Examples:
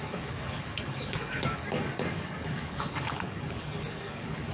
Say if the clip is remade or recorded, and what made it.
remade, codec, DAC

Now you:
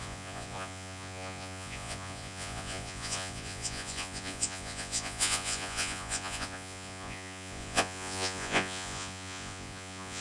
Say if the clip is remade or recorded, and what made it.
remade, vocoder, Vocos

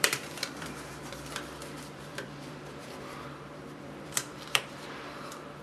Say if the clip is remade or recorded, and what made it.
remade, vocoder, BigVGAN v2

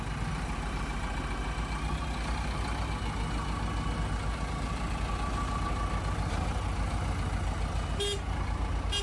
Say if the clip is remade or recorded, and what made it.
recorded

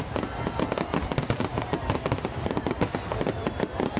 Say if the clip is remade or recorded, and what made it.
recorded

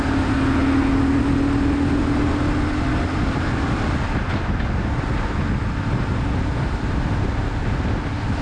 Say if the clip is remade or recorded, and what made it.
recorded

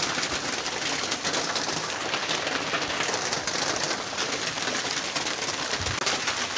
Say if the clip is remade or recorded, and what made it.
recorded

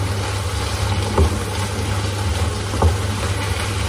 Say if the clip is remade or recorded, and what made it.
recorded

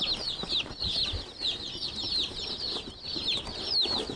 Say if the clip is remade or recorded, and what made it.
remade, vocoder, BigVGAN v2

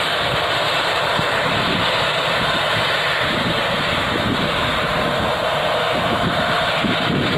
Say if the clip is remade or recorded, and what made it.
remade, vocoder, BigVGAN v2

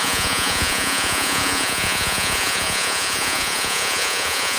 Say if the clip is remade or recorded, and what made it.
remade, vocoder, Vocos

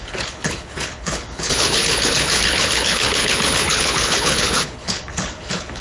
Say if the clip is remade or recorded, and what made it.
remade, codec, HILCodec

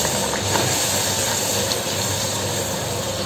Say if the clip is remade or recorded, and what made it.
recorded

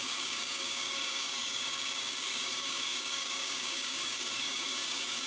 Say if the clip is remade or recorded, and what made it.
remade, codec, DAC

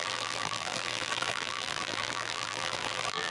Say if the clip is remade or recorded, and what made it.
remade, vocoder, BigVGAN v2